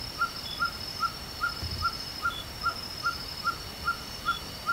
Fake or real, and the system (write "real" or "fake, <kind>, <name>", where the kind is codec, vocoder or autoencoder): fake, vocoder, BigVGAN v2